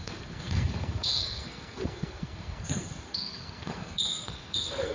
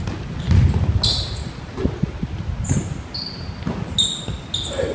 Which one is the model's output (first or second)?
first